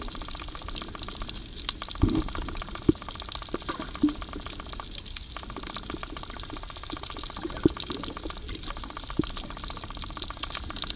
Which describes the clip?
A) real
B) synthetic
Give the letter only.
A